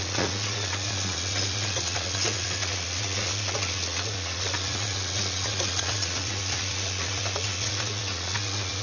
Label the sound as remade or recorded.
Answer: remade